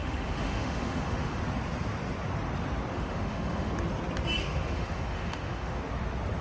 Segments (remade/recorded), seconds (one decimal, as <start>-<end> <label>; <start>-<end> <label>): 0.0-1.4 remade; 1.4-2.9 recorded; 2.9-3.7 remade; 3.7-4.4 recorded; 4.4-5.8 remade; 5.8-6.4 recorded